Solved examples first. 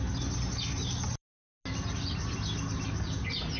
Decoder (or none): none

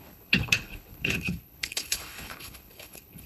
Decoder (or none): codec, HILCodec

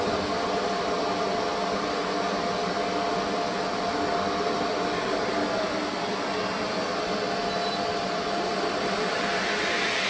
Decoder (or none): none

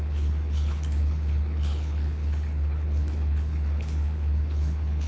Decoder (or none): codec, HILCodec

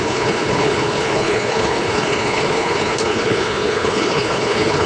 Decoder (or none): codec, HILCodec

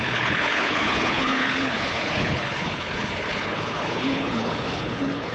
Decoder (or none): codec, HILCodec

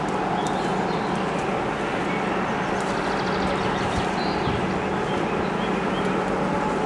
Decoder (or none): none